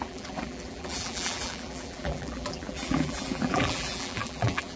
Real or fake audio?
fake